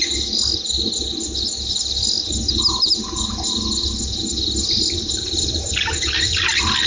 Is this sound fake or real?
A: real